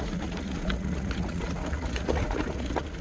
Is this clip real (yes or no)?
no